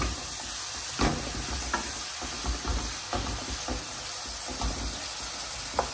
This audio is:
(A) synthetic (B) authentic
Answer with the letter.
B